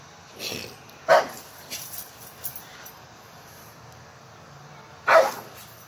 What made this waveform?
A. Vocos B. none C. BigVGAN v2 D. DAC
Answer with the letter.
B